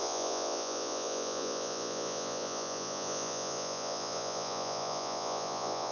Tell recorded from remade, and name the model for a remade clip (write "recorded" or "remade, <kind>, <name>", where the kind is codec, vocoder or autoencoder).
remade, vocoder, Vocos